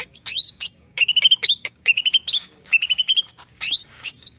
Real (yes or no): no